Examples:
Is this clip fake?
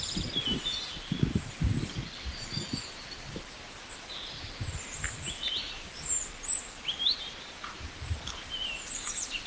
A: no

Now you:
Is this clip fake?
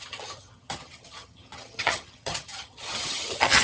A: yes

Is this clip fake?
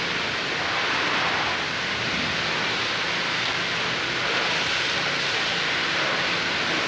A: no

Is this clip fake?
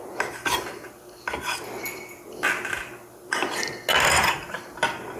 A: no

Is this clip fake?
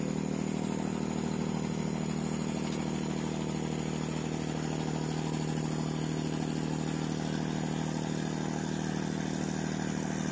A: no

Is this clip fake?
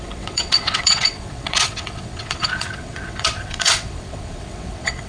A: yes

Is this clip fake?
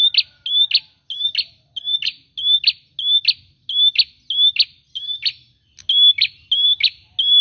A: no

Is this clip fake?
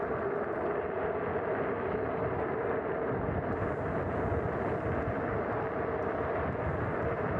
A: no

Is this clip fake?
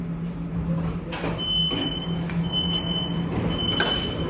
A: no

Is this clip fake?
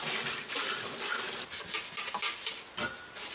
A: no